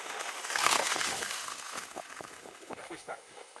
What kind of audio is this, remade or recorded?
remade